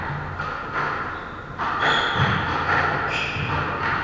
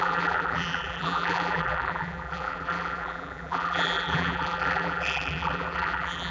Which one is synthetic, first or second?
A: second